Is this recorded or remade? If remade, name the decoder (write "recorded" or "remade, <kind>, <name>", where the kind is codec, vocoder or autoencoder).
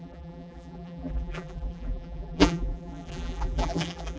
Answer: remade, vocoder, BigVGAN v2